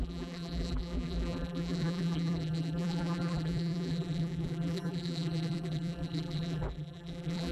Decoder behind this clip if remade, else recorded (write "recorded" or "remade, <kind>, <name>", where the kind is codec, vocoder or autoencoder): remade, vocoder, BigVGAN v2